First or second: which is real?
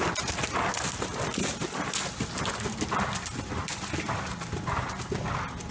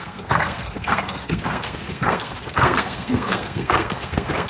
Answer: first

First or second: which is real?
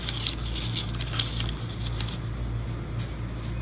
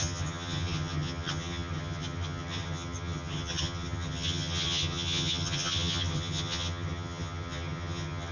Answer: first